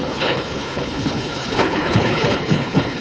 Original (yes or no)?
no